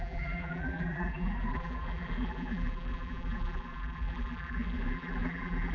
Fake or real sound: fake